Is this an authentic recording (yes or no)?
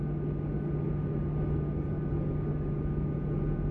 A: yes